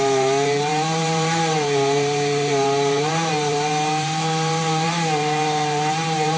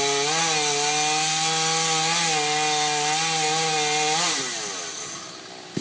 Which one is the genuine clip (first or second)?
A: second